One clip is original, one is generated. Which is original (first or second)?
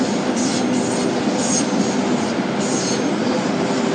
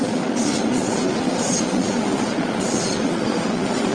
first